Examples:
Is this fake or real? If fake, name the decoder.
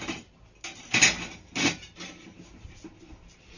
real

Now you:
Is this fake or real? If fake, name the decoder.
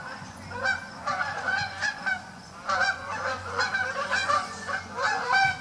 fake, vocoder, Vocos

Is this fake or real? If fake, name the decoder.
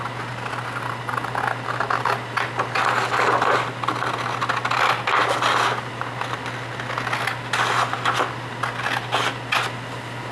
real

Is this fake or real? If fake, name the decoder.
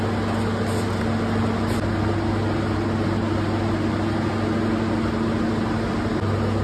real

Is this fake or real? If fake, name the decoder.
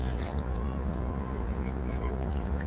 fake, vocoder, Vocos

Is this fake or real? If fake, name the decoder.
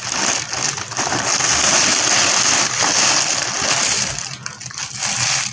real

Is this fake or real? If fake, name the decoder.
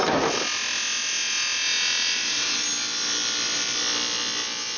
real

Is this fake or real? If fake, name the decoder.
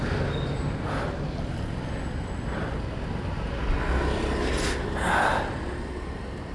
real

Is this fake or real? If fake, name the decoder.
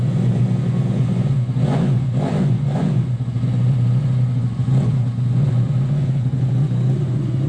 fake, vocoder, Vocos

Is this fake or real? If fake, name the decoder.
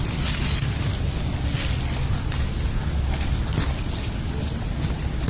real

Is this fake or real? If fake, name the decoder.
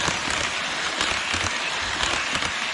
real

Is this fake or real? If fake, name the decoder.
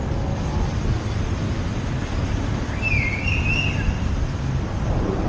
real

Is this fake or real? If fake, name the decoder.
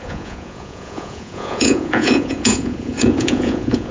fake, vocoder, Vocos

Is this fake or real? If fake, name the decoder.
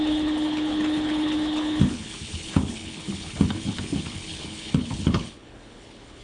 fake, codec, HILCodec